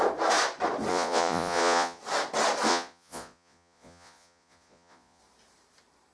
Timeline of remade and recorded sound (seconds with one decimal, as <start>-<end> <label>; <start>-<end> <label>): 0.0-0.9 recorded; 0.9-2.0 remade; 2.0-2.7 recorded; 2.7-5.2 remade; 5.2-6.1 recorded